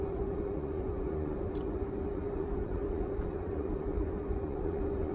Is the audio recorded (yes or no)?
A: no